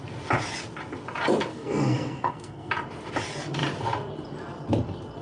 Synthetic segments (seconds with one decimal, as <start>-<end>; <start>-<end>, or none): 1.5-2.7